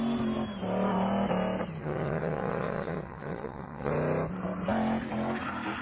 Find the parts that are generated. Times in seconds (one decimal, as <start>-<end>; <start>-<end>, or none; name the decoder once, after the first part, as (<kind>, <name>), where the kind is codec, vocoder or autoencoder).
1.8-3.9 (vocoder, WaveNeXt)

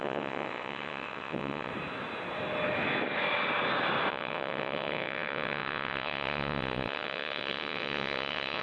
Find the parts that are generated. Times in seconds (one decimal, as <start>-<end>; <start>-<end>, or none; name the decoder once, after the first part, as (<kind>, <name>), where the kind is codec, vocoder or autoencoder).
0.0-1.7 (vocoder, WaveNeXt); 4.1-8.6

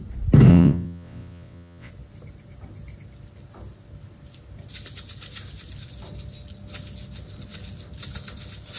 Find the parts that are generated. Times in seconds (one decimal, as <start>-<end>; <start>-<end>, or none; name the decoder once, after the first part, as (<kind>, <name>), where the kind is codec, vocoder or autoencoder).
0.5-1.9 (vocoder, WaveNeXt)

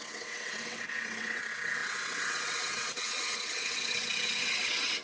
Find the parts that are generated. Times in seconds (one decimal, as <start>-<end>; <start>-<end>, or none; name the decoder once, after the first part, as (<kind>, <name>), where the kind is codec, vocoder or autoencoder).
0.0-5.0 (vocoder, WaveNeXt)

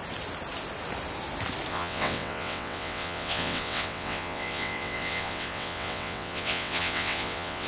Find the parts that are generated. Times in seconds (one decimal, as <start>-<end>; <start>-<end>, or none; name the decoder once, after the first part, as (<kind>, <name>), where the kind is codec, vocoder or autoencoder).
1.7-7.7 (vocoder, WaveNeXt)

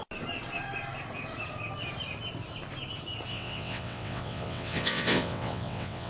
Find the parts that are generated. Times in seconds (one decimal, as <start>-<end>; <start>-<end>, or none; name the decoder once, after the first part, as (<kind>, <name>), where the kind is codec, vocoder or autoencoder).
3.3-6.1 (vocoder, WaveNeXt)

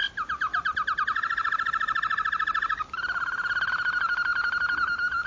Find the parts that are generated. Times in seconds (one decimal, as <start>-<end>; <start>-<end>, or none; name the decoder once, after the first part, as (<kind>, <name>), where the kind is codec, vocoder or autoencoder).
none